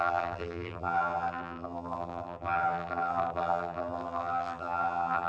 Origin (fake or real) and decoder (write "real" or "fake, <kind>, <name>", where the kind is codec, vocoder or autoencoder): fake, vocoder, BigVGAN v2